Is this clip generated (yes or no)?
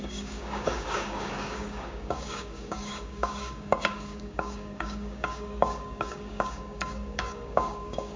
yes